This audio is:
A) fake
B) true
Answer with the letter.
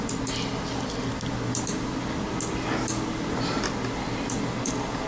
B